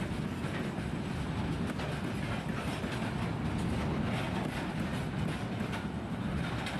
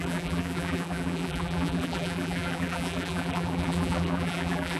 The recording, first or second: first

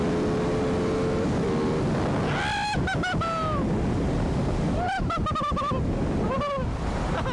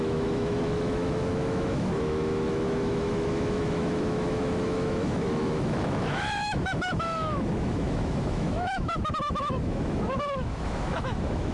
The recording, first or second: first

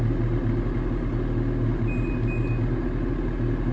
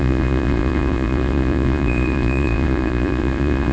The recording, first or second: first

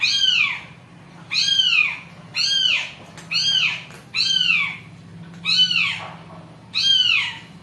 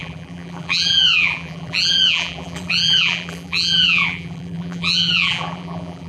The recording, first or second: first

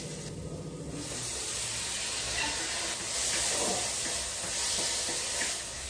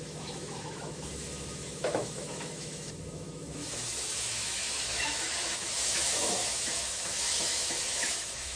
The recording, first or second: first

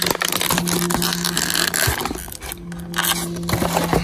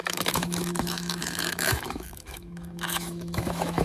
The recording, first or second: first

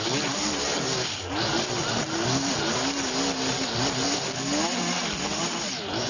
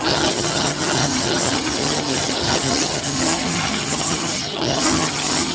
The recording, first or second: first